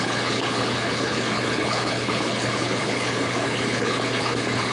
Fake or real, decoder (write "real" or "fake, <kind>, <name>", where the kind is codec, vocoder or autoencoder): fake, codec, HILCodec